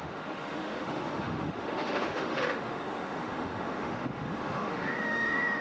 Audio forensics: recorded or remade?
remade